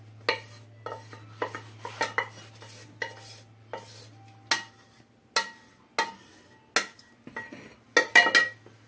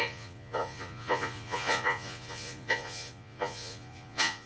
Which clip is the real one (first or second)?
first